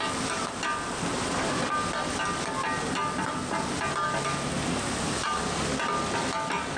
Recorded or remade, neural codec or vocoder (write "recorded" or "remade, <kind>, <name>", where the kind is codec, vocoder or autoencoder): recorded